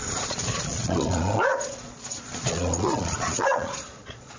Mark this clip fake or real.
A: fake